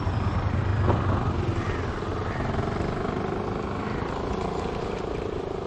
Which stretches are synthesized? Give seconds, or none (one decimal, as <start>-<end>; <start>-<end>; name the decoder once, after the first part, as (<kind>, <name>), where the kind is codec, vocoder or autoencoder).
0.0-0.7 (vocoder, BigVGAN v2); 4.1-5.7